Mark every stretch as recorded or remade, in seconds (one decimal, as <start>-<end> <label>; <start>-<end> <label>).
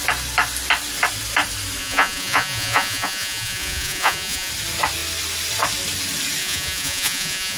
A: 0.0-1.8 recorded; 1.8-4.5 remade; 4.5-6.4 recorded; 6.4-7.6 remade